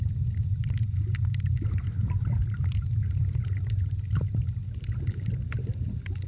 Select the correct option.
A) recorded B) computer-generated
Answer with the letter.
A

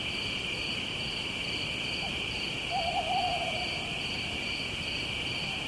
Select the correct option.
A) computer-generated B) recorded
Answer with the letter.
B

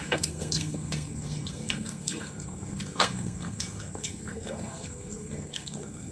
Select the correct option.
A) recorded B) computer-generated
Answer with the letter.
B